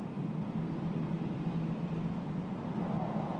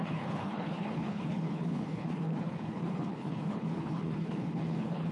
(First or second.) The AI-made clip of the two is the second